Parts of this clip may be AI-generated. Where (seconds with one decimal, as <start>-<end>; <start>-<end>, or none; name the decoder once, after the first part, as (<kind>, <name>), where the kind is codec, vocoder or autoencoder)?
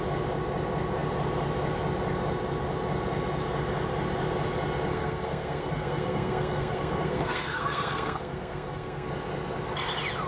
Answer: 4.9-9.1 (codec, SNAC)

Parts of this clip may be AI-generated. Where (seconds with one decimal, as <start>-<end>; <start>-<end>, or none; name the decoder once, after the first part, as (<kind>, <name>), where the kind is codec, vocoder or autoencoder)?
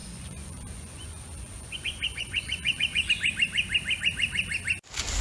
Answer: 0.0-3.1 (vocoder, Vocos)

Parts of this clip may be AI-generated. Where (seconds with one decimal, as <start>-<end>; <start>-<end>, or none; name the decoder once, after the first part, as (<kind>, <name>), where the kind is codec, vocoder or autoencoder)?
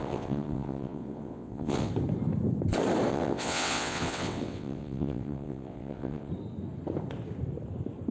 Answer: 0.0-1.9 (vocoder, WaveNeXt); 3.1-6.3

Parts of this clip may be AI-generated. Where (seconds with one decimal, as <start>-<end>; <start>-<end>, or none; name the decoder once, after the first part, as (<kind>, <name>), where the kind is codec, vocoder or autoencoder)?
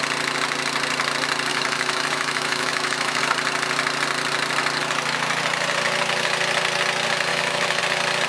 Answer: 1.5-3.2 (autoencoder, DAC-VAE); 7.3-7.8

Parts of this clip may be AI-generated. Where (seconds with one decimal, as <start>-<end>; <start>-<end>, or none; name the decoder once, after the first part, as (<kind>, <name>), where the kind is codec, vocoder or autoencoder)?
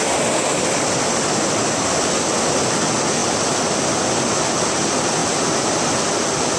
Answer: none